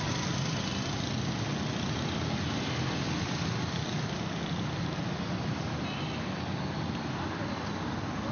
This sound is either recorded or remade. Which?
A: recorded